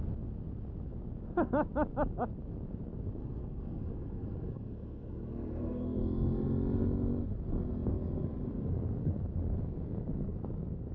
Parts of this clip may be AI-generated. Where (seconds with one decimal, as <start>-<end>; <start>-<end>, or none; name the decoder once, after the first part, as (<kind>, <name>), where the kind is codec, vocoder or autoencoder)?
3.2-6.0 (codec, SNAC)